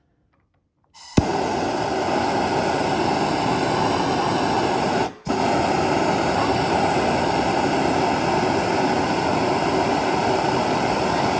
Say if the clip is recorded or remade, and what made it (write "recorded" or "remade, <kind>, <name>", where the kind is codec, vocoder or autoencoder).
recorded